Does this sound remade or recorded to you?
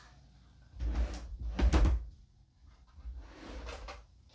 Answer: recorded